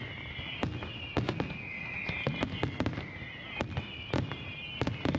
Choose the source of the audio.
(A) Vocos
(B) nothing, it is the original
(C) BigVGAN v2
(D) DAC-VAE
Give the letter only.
B